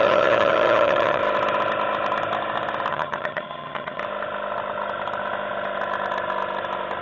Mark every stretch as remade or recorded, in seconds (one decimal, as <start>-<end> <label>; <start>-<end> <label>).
0.0-1.2 remade; 1.2-2.9 recorded; 2.9-4.0 remade; 4.0-7.0 recorded